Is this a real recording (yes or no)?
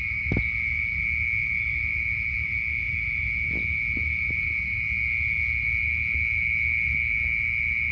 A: yes